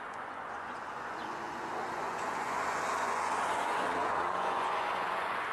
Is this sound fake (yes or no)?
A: yes